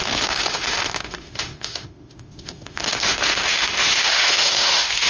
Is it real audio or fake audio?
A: fake